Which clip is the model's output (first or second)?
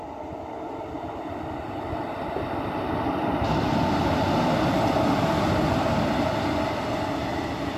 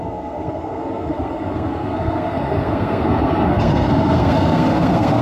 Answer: second